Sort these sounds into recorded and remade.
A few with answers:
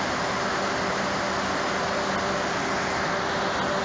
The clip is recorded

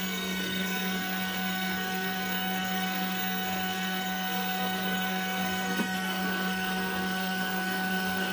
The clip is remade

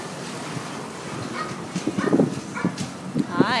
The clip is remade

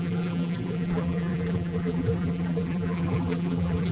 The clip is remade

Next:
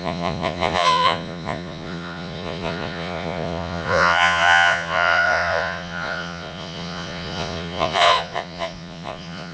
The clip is remade